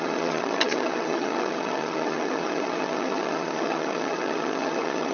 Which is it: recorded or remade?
remade